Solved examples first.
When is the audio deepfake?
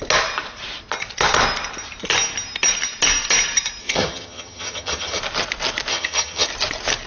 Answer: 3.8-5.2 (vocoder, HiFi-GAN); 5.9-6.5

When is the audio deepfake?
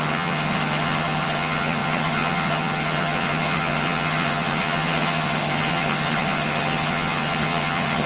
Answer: 0.0-8.1 (vocoder, HiFi-GAN)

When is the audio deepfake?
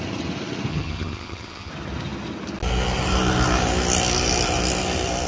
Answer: 0.7-1.7 (vocoder, HiFi-GAN)